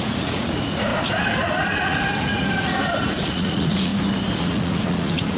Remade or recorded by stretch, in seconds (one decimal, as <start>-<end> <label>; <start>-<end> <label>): 0.0-3.9 remade; 3.9-4.4 recorded; 4.4-5.4 remade